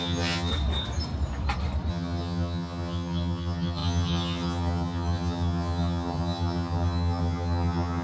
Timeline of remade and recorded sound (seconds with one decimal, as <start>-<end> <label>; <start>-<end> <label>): 0.0-0.5 remade; 0.5-1.9 recorded; 1.9-8.0 remade